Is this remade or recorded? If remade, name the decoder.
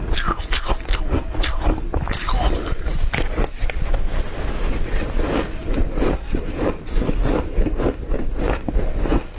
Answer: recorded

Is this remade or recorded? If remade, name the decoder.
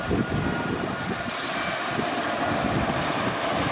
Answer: recorded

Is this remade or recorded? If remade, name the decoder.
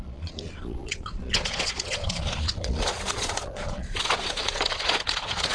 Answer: remade, vocoder, Vocos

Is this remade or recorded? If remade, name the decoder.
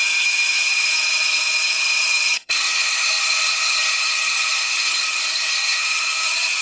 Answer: remade, vocoder, HiFi-GAN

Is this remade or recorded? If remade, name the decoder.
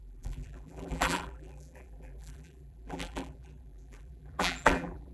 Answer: remade, vocoder, BigVGAN v2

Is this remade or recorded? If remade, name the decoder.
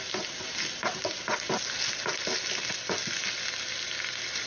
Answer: recorded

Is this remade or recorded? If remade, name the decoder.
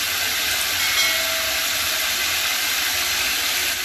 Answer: recorded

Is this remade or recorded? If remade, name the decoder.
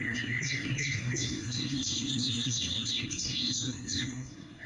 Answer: remade, codec, SNAC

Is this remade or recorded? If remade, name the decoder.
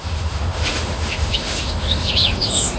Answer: remade, autoencoder, DAC-VAE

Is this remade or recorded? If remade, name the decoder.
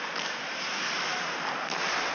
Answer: recorded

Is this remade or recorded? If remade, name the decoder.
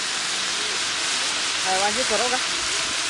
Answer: recorded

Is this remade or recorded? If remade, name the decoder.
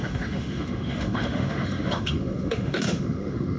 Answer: remade, autoencoder, DAC-VAE